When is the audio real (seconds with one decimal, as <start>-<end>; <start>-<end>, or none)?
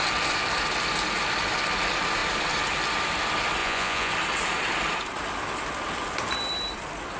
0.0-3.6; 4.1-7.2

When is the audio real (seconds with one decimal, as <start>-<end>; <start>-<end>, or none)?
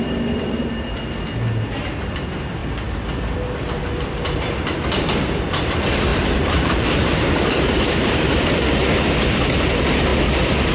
0.0-6.1; 8.5-10.7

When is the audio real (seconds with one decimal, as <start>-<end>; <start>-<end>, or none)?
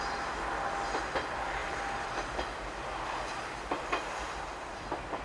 0.0-1.6; 4.7-5.2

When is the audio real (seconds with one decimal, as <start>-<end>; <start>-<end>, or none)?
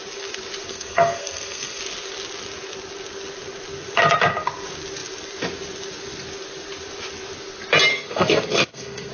0.0-0.7; 1.8-7.9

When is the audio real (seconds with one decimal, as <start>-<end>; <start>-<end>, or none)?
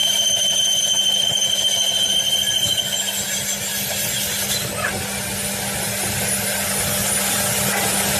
0.8-8.2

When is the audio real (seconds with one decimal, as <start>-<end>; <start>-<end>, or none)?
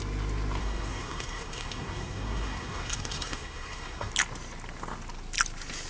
0.0-0.6; 4.1-5.9